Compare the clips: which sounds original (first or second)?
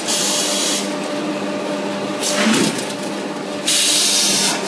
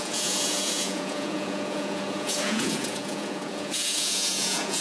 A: first